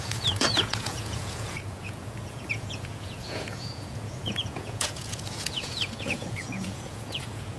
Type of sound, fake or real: fake